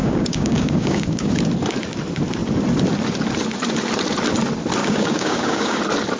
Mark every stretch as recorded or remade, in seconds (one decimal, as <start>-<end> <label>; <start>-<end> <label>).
0.0-1.3 remade; 1.3-4.8 recorded; 4.8-5.8 remade; 5.8-6.2 recorded